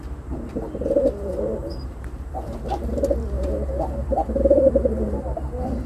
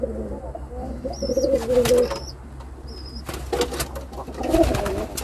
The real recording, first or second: second